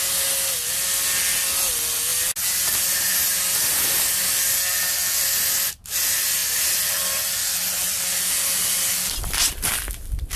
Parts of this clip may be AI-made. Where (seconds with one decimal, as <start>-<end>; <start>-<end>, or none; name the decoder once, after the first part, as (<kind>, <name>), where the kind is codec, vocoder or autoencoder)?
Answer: none